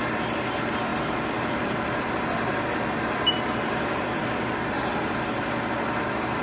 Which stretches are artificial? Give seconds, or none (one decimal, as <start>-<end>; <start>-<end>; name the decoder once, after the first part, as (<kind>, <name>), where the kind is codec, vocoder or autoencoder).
none